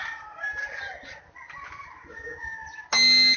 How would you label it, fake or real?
real